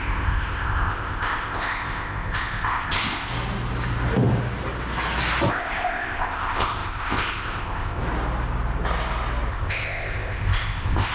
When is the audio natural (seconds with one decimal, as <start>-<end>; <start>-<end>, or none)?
3.3-5.5; 8.0-9.5